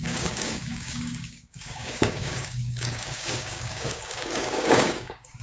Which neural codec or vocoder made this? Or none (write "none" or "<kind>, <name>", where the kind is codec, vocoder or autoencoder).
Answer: codec, DAC